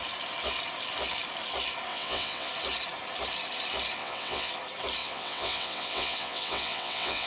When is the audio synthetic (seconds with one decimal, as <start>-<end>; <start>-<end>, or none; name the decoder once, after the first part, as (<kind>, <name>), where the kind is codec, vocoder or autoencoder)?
1.9-2.5 (vocoder, WaveNeXt); 4.0-4.5; 5.0-7.3

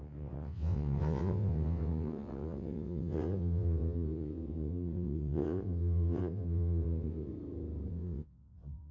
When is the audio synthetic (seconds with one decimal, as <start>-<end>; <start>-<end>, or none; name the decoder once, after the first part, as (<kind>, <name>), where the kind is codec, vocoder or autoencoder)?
0.0-7.3 (vocoder, WaveNeXt); 7.9-8.9